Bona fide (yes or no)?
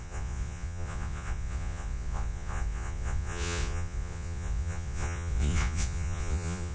no